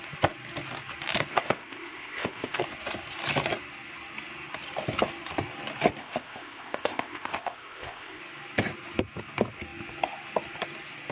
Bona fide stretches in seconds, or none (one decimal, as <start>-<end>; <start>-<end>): 0.0-1.3; 2.6-6.0; 8.2-11.1